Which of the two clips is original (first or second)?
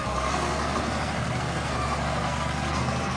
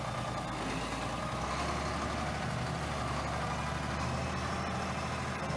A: second